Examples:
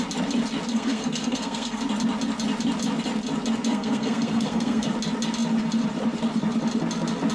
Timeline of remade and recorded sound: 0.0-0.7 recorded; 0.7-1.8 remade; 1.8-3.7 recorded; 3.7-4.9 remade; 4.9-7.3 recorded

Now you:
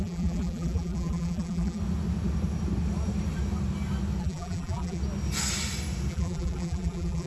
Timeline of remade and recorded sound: 0.0-1.8 remade; 1.8-4.2 recorded; 4.2-5.0 remade; 5.0-6.1 recorded; 6.1-7.3 remade

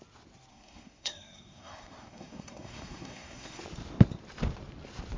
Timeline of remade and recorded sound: 0.0-0.5 recorded; 0.5-3.6 remade; 3.6-5.2 recorded

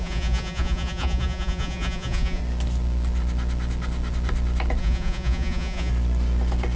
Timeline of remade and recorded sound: 0.0-2.4 remade; 2.4-4.8 recorded; 4.8-5.9 remade; 5.9-6.8 recorded

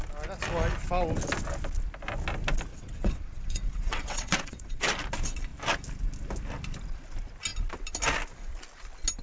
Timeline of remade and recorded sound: 0.0-2.7 recorded; 2.7-4.9 remade; 4.9-9.2 recorded

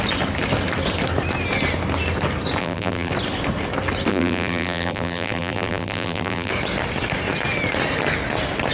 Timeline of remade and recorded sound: 0.0-2.6 recorded; 2.6-3.1 remade; 3.1-4.1 recorded; 4.1-6.5 remade; 6.5-8.7 recorded

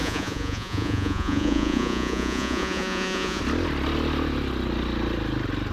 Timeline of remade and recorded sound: 0.0-3.4 remade; 3.4-5.7 recorded